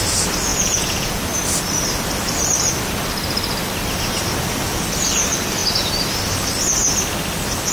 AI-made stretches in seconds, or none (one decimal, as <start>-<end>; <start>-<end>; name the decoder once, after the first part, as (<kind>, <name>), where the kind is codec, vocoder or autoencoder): 0.5-1.2 (vocoder, Vocos)

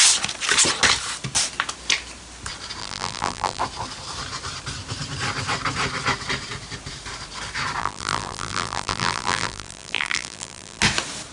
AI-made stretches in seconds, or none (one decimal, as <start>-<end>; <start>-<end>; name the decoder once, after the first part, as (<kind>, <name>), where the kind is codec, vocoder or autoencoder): 2.8-3.6 (vocoder, BigVGAN v2); 7.8-10.8

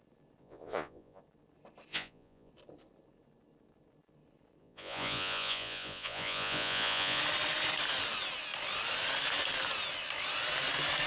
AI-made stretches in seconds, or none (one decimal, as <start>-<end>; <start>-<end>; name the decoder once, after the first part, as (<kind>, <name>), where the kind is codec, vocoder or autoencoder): 0.4-1.2 (vocoder, Vocos); 1.9-2.5; 4.6-7.2

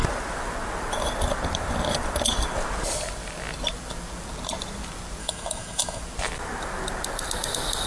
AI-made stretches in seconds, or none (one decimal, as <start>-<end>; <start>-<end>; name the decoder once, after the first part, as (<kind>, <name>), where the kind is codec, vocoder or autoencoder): 5.2-6.0 (autoencoder, DAC-VAE)

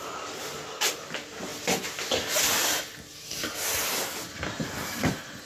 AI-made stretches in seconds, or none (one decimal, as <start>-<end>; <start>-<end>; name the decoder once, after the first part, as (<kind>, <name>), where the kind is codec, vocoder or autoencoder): none

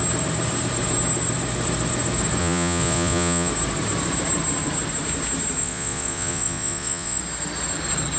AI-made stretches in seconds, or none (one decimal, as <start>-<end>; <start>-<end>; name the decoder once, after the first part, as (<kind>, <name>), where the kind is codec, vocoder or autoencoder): 2.4-3.5 (vocoder, Vocos); 5.6-7.2

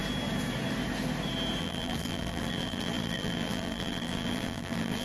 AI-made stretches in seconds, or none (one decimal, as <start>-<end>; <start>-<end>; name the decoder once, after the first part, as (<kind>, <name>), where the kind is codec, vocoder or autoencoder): 1.6-5.0 (vocoder, BigVGAN v2)